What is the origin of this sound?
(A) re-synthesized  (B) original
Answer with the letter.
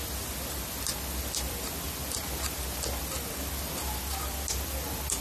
B